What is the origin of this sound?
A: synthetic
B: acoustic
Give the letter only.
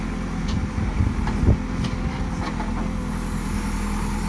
B